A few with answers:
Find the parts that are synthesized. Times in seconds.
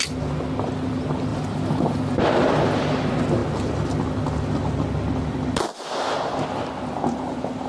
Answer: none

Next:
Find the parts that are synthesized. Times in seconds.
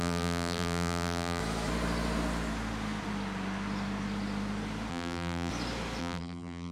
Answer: 0.0-1.4 (vocoder, BigVGAN v2); 4.9-5.5; 6.0-6.7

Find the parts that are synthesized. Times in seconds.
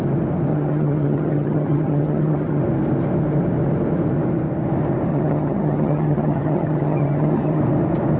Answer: 0.5-2.6 (vocoder, HiFi-GAN); 5.1-7.6